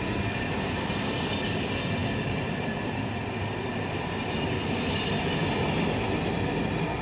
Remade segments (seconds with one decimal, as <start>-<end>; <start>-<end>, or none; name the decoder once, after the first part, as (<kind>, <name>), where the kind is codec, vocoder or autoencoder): none